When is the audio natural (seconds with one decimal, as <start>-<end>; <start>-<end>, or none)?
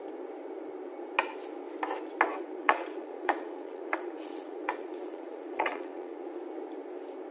0.0-2.3; 6.4-7.3